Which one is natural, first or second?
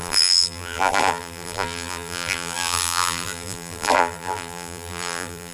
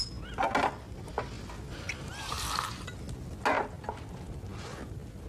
second